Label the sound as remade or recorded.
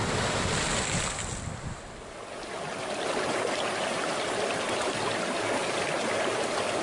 recorded